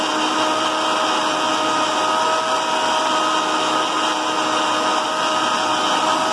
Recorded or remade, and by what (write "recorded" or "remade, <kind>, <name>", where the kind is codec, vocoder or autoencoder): recorded